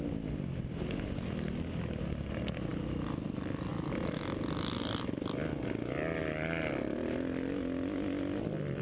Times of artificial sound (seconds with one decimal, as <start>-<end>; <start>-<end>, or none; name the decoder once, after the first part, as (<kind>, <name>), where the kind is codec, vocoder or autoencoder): none